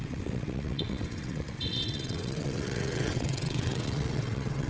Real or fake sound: fake